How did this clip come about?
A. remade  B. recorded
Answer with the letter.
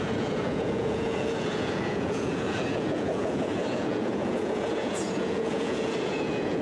A